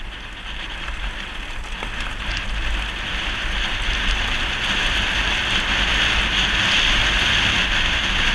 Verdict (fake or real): real